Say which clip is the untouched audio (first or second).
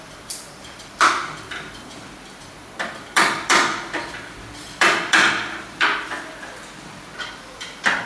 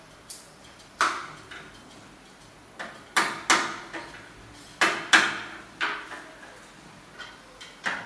second